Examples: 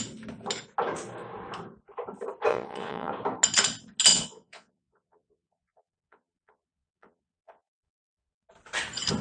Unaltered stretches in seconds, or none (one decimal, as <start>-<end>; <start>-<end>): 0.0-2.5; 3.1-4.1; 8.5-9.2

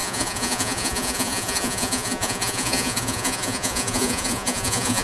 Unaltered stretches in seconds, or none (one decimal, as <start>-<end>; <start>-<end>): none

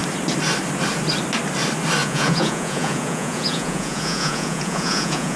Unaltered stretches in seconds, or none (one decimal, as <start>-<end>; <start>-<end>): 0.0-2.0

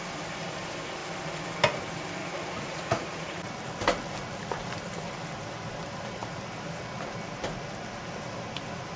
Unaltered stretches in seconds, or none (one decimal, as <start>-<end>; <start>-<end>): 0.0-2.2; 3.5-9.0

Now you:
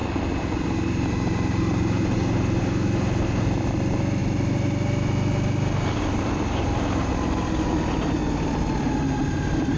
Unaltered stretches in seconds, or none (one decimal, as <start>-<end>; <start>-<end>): 0.0-9.8